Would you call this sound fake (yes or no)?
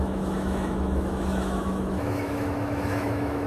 yes